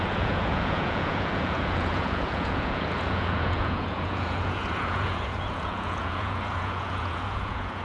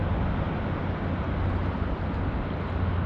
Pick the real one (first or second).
second